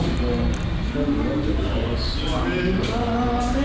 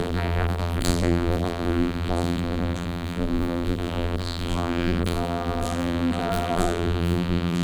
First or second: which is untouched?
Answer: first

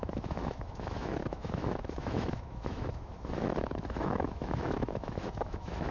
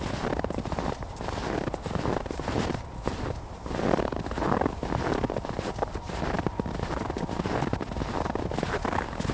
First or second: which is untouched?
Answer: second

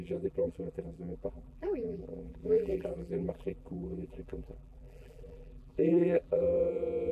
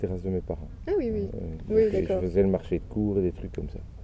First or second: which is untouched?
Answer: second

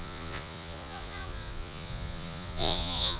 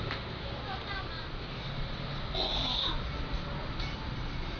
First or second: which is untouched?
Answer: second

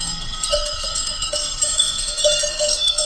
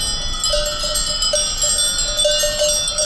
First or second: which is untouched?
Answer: second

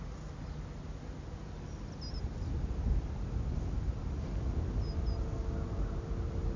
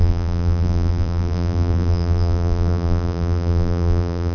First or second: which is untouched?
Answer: first